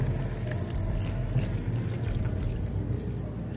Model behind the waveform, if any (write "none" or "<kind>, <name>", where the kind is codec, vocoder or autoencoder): none